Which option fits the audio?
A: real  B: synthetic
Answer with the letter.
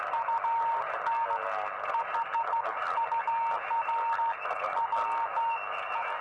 A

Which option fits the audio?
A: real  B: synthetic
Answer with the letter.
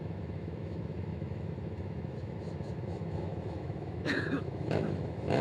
B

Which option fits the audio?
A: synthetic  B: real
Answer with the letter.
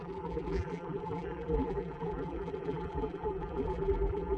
A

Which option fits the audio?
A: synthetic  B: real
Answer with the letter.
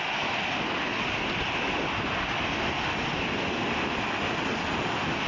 B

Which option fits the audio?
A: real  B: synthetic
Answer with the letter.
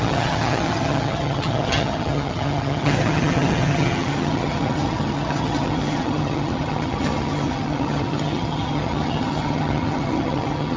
B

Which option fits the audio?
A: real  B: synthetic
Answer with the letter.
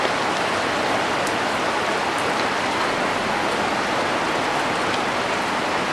A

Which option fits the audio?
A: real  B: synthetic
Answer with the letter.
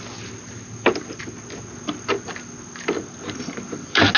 A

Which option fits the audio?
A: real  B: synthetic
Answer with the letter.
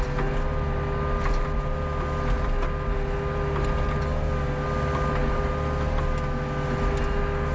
A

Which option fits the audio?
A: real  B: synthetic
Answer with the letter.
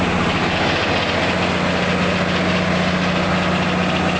A